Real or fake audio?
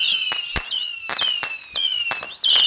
real